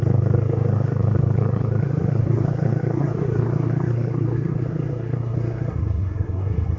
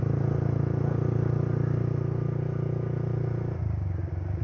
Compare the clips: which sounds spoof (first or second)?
first